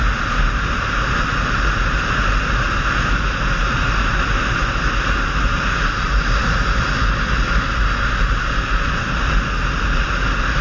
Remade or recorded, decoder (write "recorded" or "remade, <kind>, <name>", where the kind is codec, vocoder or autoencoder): recorded